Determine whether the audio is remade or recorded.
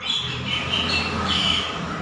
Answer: recorded